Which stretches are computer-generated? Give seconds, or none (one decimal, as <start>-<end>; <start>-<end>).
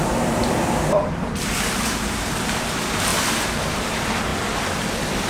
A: 0.0-3.1; 3.7-4.3